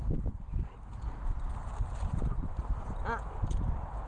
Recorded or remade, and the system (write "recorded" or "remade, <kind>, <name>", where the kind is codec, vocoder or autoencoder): recorded